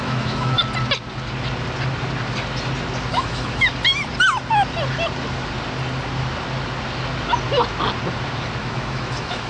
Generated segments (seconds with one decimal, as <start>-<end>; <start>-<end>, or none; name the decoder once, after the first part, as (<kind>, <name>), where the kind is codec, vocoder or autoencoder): 0.0-0.6 (autoencoder, DAC-VAE); 3.1-3.7; 8.6-9.5